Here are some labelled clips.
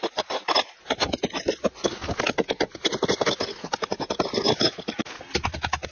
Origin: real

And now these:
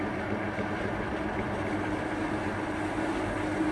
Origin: real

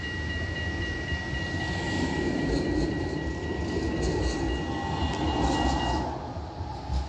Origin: real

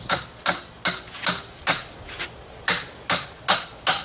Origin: real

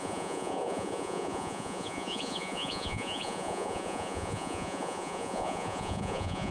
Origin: fake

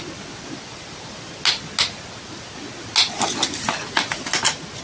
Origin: real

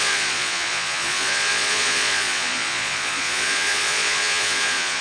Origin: fake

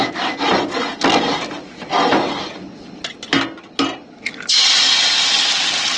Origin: real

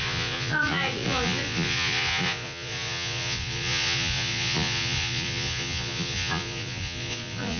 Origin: fake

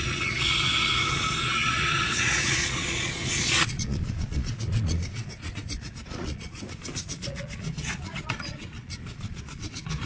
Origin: fake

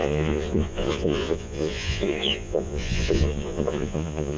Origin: fake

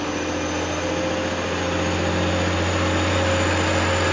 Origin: real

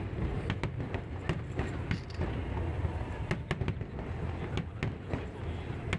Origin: real